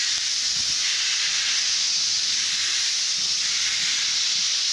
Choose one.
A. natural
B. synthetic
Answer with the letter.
A